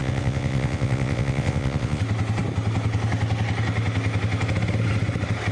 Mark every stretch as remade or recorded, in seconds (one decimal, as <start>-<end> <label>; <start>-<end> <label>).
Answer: 0.0-2.0 remade; 2.0-5.5 recorded